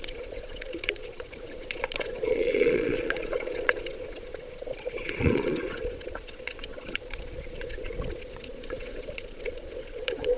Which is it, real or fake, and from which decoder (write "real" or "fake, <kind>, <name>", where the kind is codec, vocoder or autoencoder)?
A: fake, vocoder, Vocos